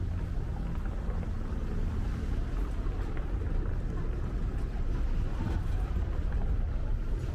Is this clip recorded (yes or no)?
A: yes